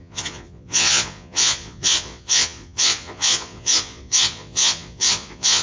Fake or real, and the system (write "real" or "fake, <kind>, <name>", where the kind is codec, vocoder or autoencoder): fake, vocoder, Vocos